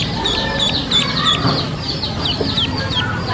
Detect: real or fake real